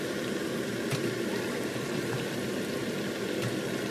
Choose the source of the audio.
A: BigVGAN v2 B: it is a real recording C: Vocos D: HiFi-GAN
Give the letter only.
B